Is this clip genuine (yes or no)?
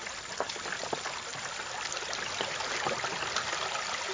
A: yes